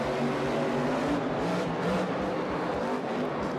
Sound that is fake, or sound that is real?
real